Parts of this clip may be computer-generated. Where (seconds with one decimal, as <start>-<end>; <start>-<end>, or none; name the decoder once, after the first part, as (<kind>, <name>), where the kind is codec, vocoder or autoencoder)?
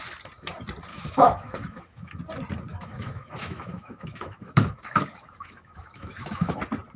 0.9-2.2 (autoencoder, DAC-VAE); 2.7-6.6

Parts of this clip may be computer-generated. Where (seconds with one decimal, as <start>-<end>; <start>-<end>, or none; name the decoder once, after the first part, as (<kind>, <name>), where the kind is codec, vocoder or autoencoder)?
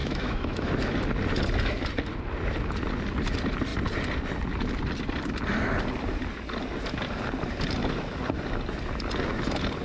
0.0-0.7 (autoencoder, DAC-VAE)